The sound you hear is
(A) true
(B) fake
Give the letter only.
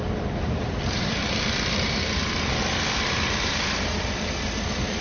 A